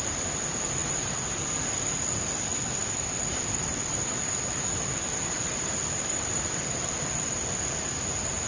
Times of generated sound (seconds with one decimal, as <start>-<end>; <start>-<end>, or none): 2.8-6.7

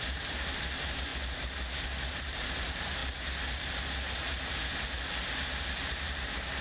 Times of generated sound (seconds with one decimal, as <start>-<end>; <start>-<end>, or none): 0.0-1.1; 2.2-3.0; 5.7-6.6